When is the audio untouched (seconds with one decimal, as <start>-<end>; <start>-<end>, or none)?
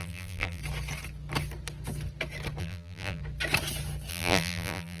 0.6-2.6; 3.2-4.1